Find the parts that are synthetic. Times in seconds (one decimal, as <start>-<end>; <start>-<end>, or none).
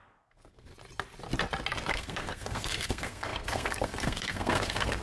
0.0-0.7; 1.9-5.0